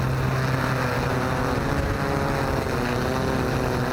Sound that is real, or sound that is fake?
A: real